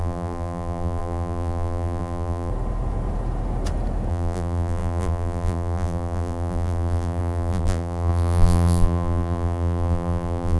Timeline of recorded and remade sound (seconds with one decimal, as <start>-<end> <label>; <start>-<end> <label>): 0.0-2.5 remade; 2.5-4.1 recorded; 4.1-10.6 remade